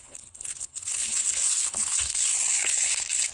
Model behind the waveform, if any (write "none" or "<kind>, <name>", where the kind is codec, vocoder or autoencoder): codec, HILCodec